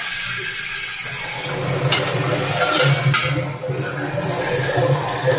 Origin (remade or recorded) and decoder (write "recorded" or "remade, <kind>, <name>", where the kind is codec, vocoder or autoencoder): recorded